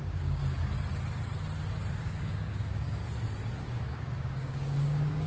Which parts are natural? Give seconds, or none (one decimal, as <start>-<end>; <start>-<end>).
0.4-1.9; 3.0-3.6